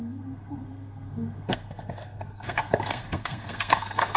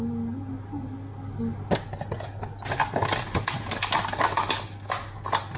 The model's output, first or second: first